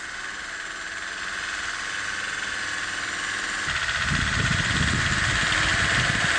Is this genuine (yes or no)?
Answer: yes